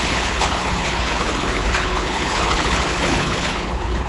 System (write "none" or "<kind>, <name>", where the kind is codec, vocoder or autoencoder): codec, HILCodec